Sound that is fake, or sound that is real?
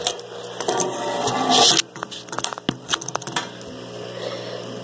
real